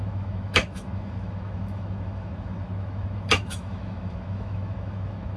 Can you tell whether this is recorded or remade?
remade